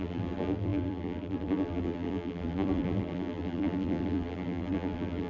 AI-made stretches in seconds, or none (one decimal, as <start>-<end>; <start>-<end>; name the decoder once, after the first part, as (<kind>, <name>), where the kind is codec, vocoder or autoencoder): 0.0-5.3 (vocoder, BigVGAN v2)